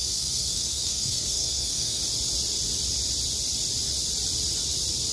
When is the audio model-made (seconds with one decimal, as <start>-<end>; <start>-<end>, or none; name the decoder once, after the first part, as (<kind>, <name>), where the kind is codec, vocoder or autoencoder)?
0.0-2.0 (codec, SNAC)